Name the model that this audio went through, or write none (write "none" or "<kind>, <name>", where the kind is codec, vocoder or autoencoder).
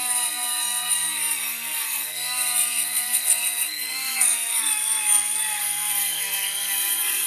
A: codec, SNAC